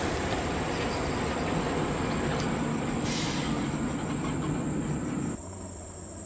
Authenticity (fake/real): real